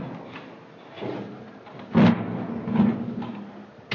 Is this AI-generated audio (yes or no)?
no